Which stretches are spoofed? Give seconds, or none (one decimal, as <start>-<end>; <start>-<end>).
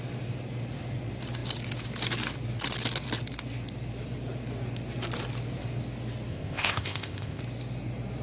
6.3-7.4